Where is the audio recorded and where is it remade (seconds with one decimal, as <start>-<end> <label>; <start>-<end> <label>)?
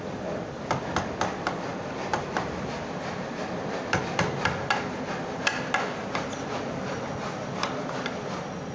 0.0-8.7 recorded